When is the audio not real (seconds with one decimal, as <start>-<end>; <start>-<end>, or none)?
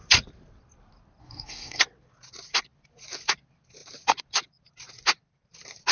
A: 1.2-1.8